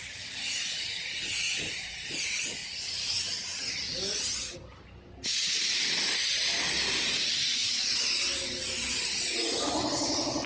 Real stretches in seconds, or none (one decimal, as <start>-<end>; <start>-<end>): 0.0-10.5